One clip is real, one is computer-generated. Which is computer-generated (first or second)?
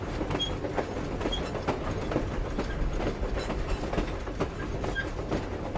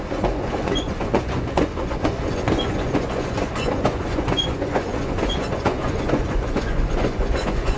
second